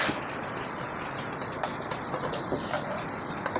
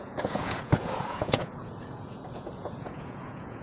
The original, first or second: first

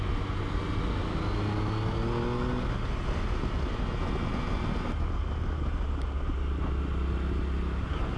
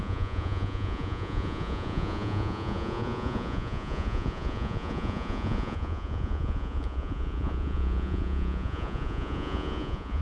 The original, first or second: first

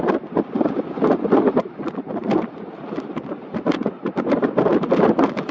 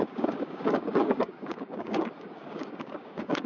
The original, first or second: first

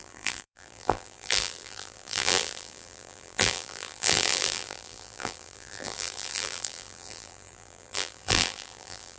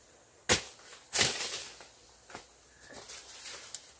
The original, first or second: second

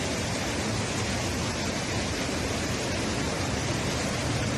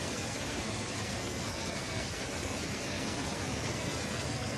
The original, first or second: first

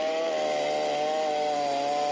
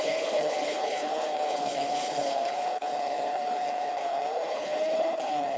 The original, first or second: first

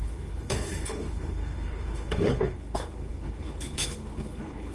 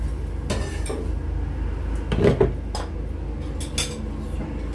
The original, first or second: second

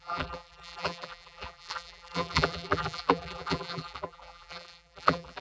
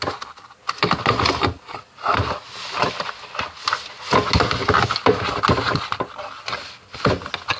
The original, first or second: second